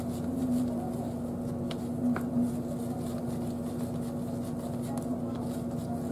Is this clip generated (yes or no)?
no